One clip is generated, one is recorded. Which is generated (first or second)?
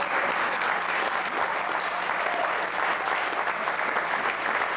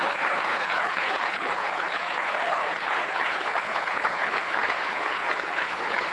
second